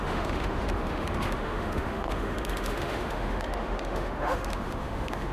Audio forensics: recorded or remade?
remade